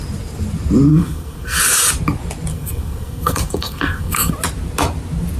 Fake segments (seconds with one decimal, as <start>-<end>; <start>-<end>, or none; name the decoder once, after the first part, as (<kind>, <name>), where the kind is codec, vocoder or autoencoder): 0.9-1.6 (codec, SNAC); 2.5-4.3